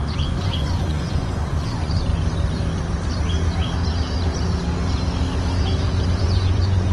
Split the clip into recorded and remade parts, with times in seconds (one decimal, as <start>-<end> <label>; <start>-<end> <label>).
0.0-2.1 remade; 2.1-6.2 recorded; 6.2-6.9 remade